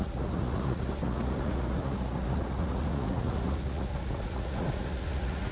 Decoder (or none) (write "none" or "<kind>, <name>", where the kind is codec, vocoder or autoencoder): vocoder, Vocos